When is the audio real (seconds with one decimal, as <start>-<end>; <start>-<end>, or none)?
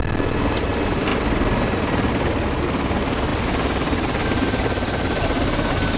0.0-6.0